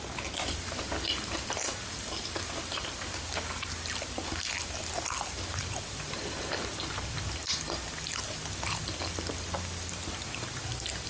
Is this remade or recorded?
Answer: remade